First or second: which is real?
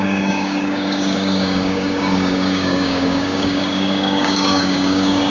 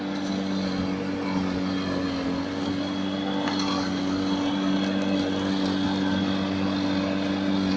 second